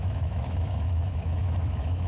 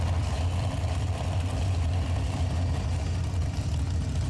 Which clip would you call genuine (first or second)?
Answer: second